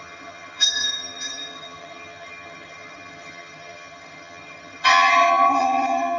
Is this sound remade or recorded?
remade